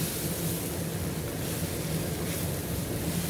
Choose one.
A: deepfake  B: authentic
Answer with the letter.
B